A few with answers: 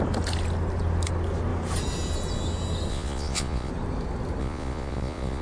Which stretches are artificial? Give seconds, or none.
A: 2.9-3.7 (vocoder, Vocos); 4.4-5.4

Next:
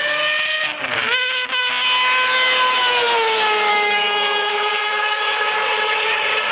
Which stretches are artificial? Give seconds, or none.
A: 3.7-6.0 (autoencoder, DAC-VAE)

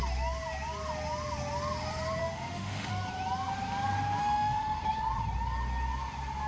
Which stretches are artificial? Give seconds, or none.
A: 2.2-2.9 (autoencoder, DAC-VAE); 4.2-4.8

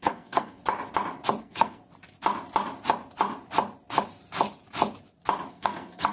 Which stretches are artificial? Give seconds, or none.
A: 0.0-0.6 (codec, SNAC); 1.4-1.8; 5.5-6.1

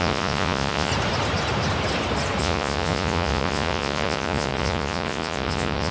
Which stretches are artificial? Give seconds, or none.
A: 0.0-0.9 (vocoder, Vocos); 2.4-5.9